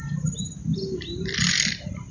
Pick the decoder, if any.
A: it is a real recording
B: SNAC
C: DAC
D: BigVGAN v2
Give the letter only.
A